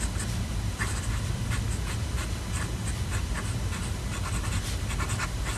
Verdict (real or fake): real